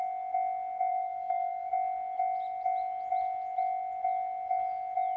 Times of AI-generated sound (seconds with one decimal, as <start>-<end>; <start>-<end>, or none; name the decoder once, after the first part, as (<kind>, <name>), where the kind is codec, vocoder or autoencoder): 0.9-1.7 (codec, SNAC)